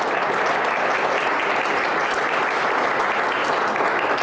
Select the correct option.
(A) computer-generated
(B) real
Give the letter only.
B